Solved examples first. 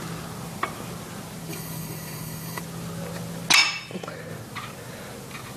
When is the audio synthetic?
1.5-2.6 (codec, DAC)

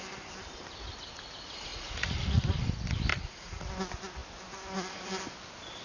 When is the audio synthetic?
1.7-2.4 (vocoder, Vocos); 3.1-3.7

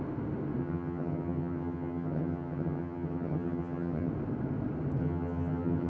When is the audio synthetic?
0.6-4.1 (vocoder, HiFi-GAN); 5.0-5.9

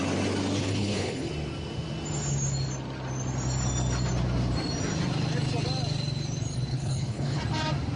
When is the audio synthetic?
0.6-1.3 (codec, HILCodec); 6.7-7.4